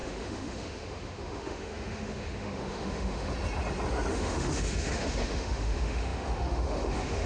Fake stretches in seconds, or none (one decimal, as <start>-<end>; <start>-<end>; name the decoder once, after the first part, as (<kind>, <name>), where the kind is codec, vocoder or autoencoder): 0.0-3.3 (autoencoder, DAC-VAE); 4.1-7.3